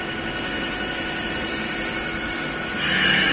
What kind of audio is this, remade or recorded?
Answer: recorded